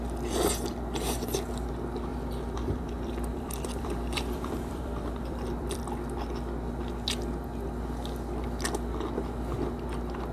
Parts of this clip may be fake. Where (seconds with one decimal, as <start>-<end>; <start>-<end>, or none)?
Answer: 2.1-5.8